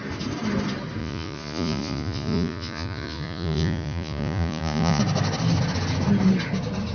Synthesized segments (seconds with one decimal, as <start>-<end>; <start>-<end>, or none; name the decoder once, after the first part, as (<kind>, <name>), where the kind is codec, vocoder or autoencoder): 1.0-5.0 (vocoder, Vocos)